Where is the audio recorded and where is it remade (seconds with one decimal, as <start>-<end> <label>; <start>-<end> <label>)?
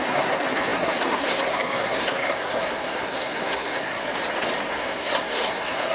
0.0-4.0 remade; 4.0-4.7 recorded; 4.7-5.9 remade